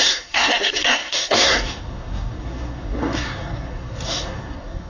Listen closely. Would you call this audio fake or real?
fake